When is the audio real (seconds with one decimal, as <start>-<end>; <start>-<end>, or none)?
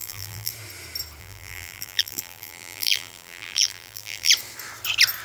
0.5-1.2; 4.3-5.2